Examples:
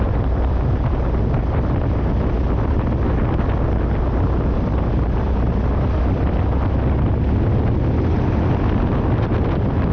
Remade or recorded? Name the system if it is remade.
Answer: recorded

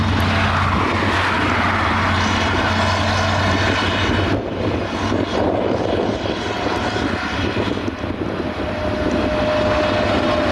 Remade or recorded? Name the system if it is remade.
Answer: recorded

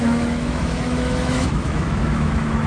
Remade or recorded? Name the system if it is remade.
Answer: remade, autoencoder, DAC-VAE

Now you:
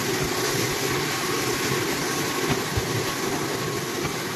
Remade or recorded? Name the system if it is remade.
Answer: recorded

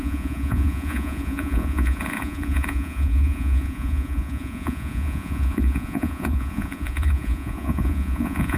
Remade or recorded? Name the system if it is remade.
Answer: remade, vocoder, Vocos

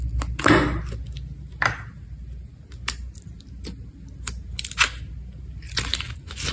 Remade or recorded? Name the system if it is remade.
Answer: recorded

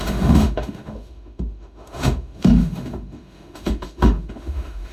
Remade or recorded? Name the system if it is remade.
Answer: remade, autoencoder, DAC-VAE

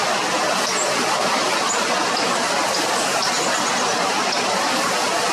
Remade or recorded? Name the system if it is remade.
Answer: recorded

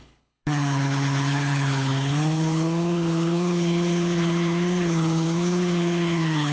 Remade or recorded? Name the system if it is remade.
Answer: remade, codec, HILCodec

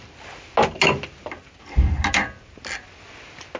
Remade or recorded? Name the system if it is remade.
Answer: recorded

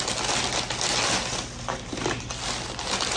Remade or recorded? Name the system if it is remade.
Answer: recorded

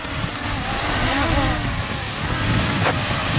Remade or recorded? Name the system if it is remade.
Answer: recorded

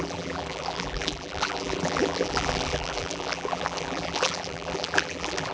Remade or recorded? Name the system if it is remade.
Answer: remade, vocoder, BigVGAN v2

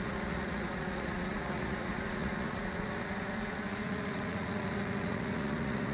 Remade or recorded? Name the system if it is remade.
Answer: remade, vocoder, Vocos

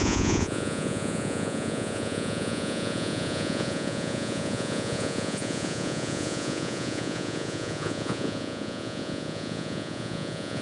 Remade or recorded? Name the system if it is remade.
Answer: remade, vocoder, Vocos